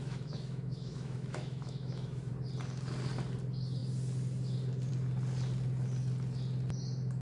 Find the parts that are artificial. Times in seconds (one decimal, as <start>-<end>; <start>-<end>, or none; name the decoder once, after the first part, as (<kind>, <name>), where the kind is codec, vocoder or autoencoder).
0.0-2.3 (autoencoder, DAC-VAE)